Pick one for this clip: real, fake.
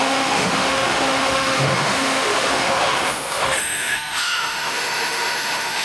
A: fake